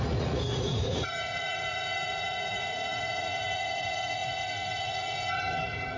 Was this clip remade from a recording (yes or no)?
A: yes